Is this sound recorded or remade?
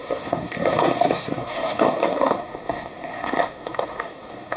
remade